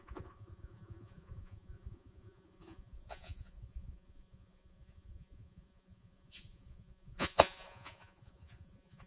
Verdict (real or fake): fake